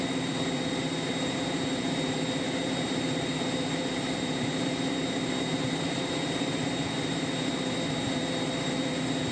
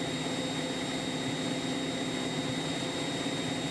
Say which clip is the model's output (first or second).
first